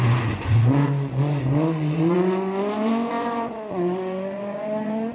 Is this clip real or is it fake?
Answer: fake